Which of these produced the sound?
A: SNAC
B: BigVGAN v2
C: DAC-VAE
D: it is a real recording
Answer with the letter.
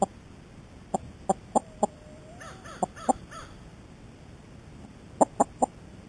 D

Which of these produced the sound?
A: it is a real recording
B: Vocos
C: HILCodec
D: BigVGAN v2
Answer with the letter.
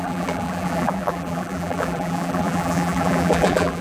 D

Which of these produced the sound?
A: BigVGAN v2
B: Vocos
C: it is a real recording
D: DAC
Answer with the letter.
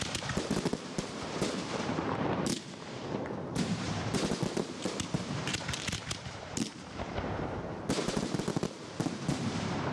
A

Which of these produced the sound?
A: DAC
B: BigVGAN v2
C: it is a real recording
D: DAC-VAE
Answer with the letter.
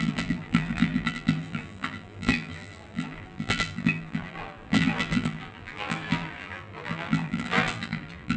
B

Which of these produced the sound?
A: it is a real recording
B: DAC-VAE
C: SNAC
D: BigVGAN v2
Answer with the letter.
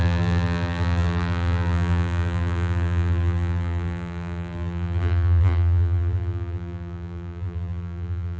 D